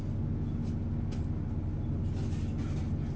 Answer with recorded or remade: recorded